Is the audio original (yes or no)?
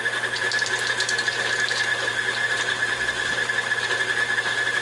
yes